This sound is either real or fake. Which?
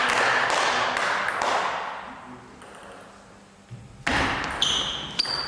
real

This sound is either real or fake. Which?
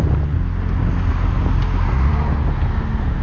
real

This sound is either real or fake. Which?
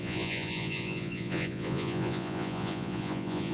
fake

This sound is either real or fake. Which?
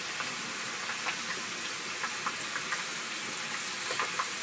real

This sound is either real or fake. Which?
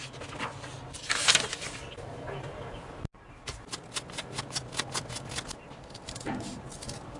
real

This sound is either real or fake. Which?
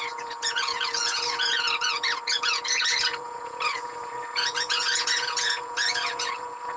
fake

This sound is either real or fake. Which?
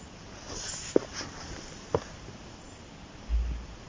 real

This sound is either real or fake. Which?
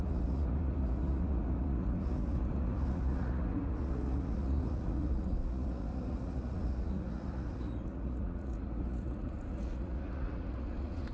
fake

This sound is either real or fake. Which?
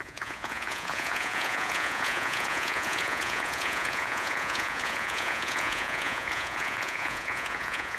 fake